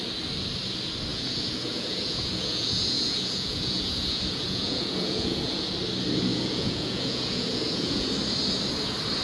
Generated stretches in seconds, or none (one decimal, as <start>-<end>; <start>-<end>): 1.1-5.7; 6.3-8.1